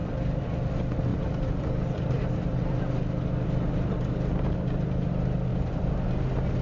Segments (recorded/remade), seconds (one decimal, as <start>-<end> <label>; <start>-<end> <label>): 0.0-0.7 remade; 0.7-1.1 recorded; 1.1-5.1 remade; 5.1-5.5 recorded; 5.5-6.1 remade; 6.1-6.6 recorded